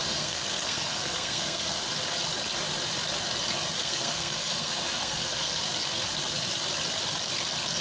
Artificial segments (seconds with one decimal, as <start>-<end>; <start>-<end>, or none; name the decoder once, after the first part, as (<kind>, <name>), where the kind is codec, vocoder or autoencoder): 0.0-1.8 (codec, SNAC); 3.8-5.6